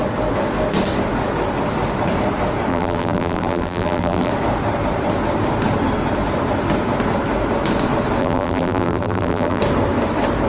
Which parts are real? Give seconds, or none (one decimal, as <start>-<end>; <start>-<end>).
0.0-2.7; 4.3-8.2; 9.6-10.5